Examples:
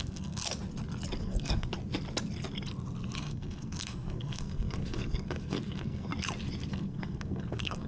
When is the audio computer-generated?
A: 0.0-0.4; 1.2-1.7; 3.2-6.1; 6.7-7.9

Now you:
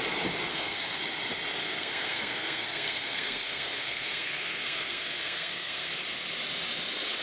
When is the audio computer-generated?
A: 0.5-1.0; 1.6-5.9

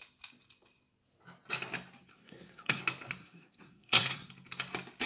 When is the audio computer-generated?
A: 2.1-2.8; 3.2-4.3

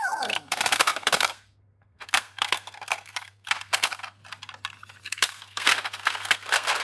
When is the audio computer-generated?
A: 0.0-4.2; 5.0-6.8